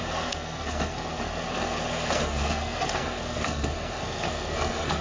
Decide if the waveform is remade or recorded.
remade